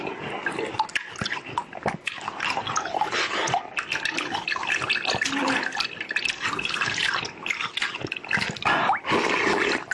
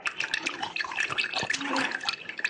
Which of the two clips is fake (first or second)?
second